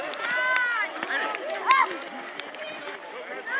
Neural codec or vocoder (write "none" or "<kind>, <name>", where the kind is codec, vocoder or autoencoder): none